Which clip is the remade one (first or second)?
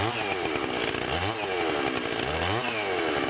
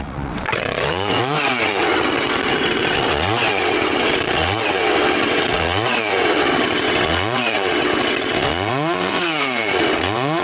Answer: second